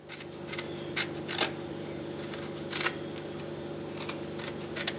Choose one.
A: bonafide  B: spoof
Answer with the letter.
A